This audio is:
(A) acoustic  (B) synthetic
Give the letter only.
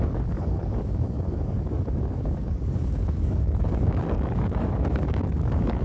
B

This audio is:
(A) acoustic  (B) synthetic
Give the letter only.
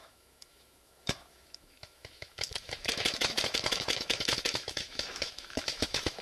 B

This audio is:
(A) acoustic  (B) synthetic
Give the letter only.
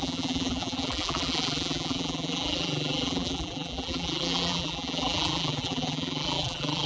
B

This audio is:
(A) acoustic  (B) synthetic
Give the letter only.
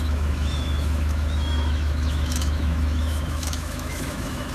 B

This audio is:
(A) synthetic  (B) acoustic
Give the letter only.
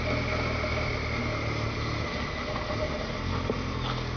B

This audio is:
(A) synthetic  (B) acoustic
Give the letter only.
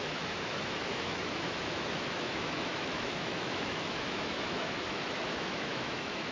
A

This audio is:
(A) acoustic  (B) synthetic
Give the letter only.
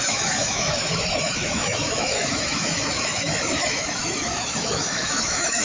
B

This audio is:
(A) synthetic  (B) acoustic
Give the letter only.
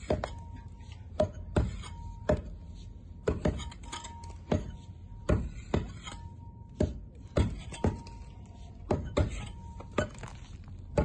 B